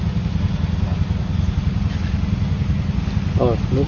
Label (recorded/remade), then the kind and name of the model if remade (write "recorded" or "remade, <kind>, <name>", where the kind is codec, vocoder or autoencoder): recorded